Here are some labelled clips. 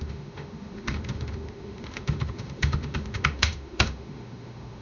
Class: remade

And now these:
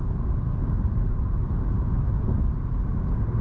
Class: recorded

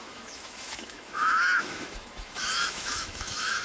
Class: remade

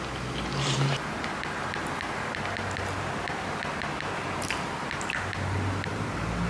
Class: recorded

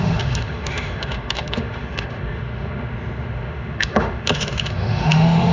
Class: remade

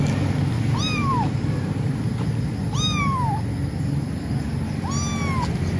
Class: recorded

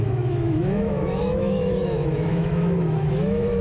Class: remade